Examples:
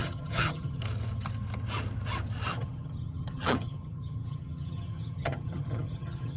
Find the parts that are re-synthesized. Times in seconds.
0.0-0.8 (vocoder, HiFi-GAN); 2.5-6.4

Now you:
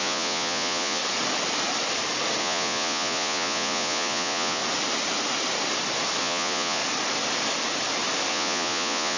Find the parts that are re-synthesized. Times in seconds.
0.0-1.0 (vocoder, Vocos); 2.4-4.6; 6.2-6.8; 8.3-9.2

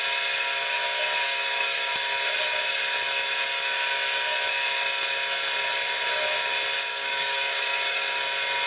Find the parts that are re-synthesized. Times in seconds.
1.2-1.9 (codec, DAC); 6.9-8.2

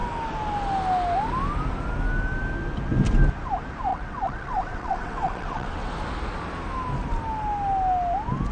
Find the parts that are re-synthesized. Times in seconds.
3.9-5.9 (vocoder, WaveNeXt)

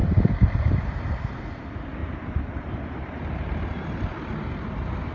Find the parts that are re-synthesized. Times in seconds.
2.0-4.2 (vocoder, BigVGAN v2)

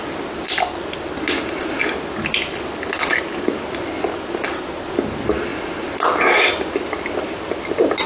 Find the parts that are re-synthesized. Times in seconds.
none